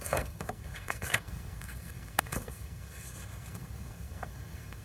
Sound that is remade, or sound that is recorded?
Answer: remade